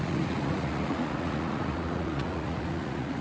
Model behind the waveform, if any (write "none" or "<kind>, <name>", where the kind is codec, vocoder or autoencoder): vocoder, Vocos